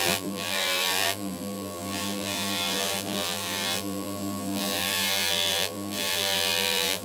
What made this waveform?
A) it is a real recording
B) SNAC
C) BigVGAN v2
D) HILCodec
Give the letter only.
C